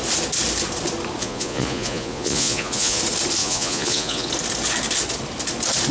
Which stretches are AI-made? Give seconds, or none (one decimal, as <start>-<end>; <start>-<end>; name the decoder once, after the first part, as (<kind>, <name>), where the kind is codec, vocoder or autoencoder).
1.2-3.0 (vocoder, Vocos); 3.4-4.3